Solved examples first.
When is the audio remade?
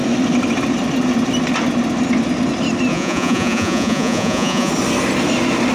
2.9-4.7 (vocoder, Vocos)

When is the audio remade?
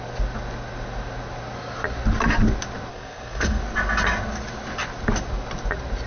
2.9-3.6 (codec, SNAC)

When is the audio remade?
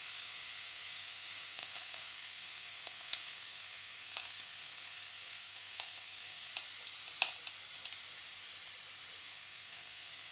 0.0-6.5 (codec, SNAC); 9.2-10.3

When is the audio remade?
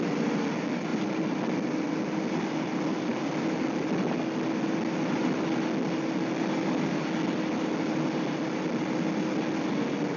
0.9-3.2 (vocoder, BigVGAN v2)